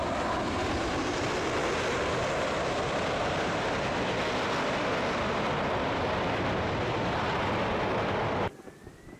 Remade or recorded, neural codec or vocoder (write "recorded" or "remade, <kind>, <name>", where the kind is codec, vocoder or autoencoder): remade, vocoder, BigVGAN v2